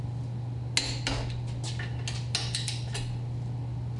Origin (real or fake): real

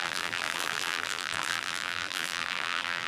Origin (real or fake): fake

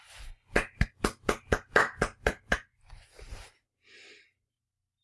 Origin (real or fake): fake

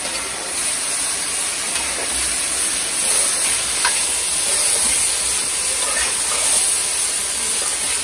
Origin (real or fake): real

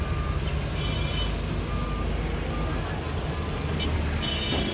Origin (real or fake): real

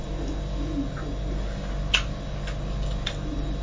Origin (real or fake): real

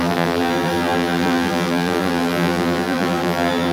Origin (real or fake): fake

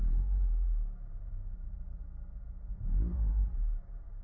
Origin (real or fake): fake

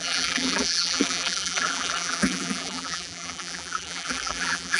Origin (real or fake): fake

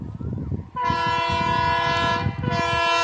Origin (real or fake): real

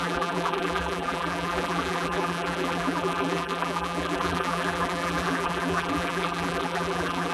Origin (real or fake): fake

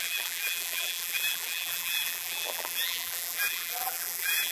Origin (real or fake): fake